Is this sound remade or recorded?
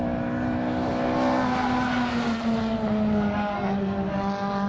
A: recorded